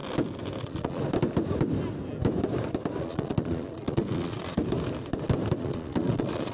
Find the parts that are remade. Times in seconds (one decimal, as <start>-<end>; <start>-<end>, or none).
0.6-1.0; 3.0-4.6; 5.6-6.5